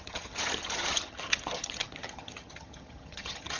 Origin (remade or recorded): remade